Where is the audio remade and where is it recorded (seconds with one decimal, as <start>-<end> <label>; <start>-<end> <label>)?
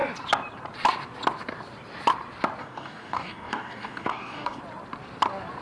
0.0-2.6 recorded; 2.6-4.6 remade; 4.6-5.6 recorded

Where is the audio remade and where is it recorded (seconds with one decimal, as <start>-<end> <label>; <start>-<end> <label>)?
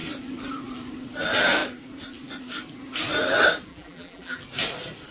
0.0-3.7 recorded; 3.7-4.4 remade; 4.4-5.1 recorded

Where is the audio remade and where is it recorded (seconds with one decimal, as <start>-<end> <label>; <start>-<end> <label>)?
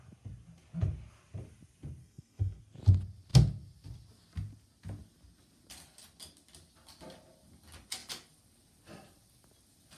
0.0-2.0 recorded; 2.0-2.6 remade; 2.6-10.0 recorded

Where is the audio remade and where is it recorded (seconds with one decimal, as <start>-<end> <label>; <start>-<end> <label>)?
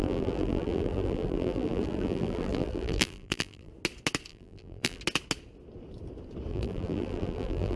0.0-3.7 remade; 3.7-4.3 recorded; 4.3-5.0 remade; 5.0-6.5 recorded; 6.5-7.8 remade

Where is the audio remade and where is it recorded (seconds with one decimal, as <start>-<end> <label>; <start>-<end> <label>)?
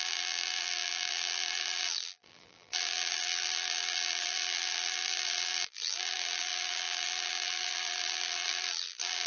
0.0-9.3 remade